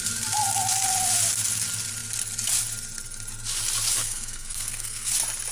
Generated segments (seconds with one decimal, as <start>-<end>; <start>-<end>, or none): 4.0-5.1